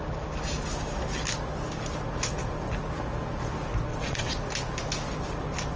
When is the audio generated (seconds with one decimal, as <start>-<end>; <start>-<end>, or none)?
3.9-4.4